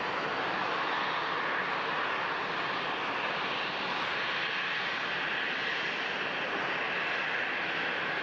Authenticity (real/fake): real